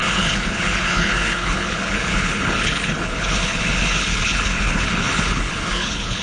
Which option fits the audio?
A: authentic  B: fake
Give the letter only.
B